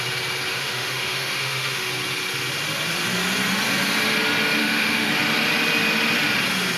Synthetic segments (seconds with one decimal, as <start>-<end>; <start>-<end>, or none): 0.5-1.9; 4.6-5.1